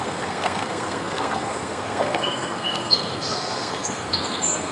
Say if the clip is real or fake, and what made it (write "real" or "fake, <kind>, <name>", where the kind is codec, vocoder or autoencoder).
fake, codec, SNAC